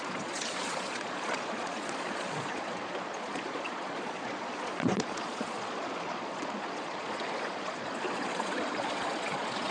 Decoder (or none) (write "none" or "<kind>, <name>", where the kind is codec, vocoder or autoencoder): vocoder, Vocos